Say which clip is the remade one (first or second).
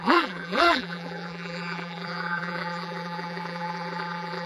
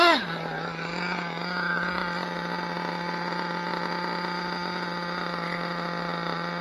first